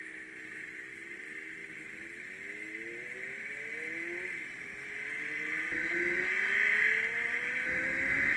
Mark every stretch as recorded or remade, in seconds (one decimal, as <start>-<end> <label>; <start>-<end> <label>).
0.0-8.4 recorded